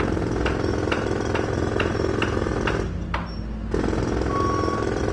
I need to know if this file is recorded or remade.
recorded